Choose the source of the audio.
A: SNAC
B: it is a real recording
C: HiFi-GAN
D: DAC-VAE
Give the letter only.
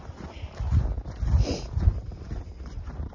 B